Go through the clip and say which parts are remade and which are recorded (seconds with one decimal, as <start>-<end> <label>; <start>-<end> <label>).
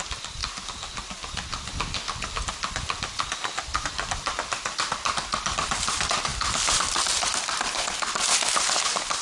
0.0-0.4 remade; 0.4-2.4 recorded; 2.4-9.2 remade